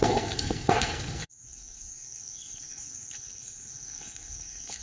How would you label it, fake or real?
fake